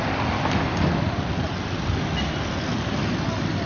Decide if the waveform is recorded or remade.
recorded